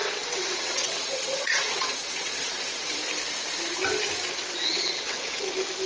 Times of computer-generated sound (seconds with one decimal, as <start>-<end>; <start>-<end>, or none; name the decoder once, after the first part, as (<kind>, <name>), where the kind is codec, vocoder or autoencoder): 0.0-3.0 (vocoder, WaveNeXt); 4.3-5.4